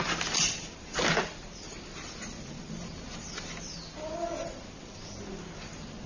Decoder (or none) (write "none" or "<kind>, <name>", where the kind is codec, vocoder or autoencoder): none